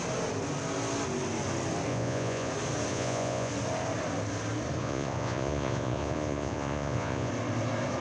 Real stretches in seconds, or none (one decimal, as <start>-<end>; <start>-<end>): 0.0-1.9; 2.5-2.9; 3.5-4.8; 7.3-8.0